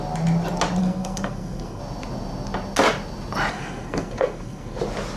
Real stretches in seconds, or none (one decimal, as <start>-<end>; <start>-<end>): 0.0-0.8; 1.8-3.5; 4.8-5.2